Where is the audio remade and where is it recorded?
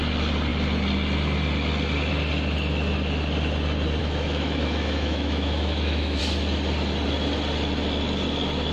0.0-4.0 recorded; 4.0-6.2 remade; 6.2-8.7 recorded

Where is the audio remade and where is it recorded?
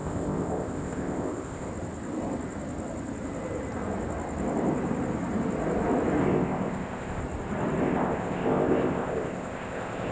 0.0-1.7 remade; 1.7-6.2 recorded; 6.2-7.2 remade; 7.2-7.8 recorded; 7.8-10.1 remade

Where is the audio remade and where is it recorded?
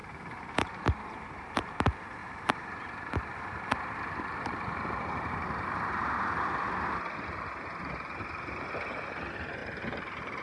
0.0-1.7 remade; 1.7-2.2 recorded; 2.2-6.9 remade; 6.9-9.6 recorded; 9.6-10.4 remade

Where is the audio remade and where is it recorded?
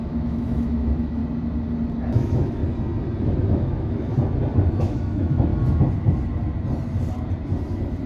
0.0-1.2 remade; 1.2-2.1 recorded; 2.1-2.6 remade; 2.6-3.2 recorded; 3.2-4.1 remade; 4.1-4.8 recorded; 4.8-5.5 remade; 5.5-8.1 recorded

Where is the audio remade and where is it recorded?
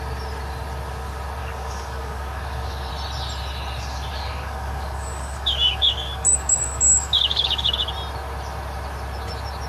0.0-1.4 recorded; 1.4-2.9 remade; 2.9-4.1 recorded; 4.1-7.8 remade; 7.8-9.7 recorded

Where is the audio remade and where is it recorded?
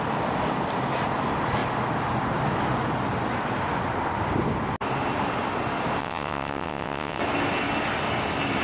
0.0-6.0 recorded; 6.0-7.2 remade; 7.2-8.6 recorded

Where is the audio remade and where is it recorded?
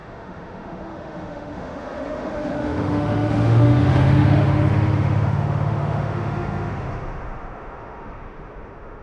0.0-9.0 remade